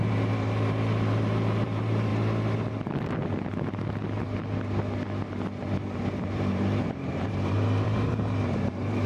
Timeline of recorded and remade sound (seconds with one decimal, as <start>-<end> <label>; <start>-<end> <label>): 0.0-2.1 remade; 2.1-6.2 recorded; 6.2-9.1 remade